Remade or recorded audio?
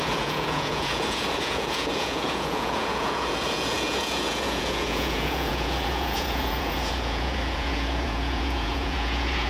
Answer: remade